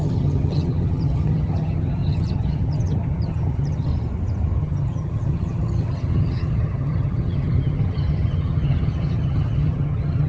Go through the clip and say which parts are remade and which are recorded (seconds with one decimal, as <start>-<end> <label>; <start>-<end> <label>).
0.0-3.9 remade; 3.9-4.6 recorded; 4.6-10.3 remade